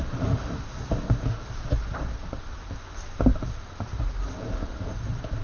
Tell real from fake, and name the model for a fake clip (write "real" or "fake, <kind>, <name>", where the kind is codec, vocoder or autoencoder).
real